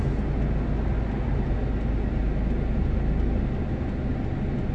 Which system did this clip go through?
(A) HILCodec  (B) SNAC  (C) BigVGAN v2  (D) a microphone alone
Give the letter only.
D